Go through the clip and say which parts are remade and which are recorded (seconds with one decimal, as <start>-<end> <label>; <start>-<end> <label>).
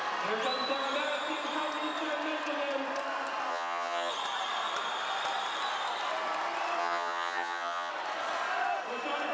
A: 0.0-3.5 recorded; 3.5-4.1 remade; 4.1-6.8 recorded; 6.8-7.9 remade; 7.9-9.3 recorded